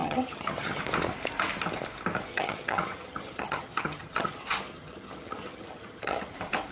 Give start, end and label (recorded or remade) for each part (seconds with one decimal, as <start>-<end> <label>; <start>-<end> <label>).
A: 0.0-0.8 remade; 0.8-2.3 recorded; 2.3-6.3 remade; 6.3-6.7 recorded